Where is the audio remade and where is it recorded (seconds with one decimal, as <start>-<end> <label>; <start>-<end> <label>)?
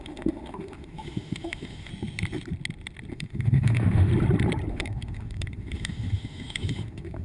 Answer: 0.0-1.9 remade; 1.9-3.1 recorded; 3.1-4.1 remade; 4.1-4.7 recorded; 4.7-7.2 remade